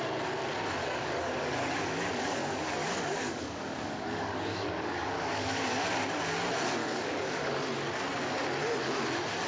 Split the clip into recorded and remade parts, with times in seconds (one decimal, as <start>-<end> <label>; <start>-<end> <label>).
0.0-0.8 recorded; 0.8-5.7 remade; 5.7-6.8 recorded; 6.8-7.6 remade; 7.6-9.5 recorded